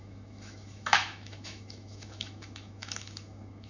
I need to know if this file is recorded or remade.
remade